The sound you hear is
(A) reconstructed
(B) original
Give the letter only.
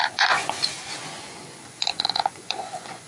A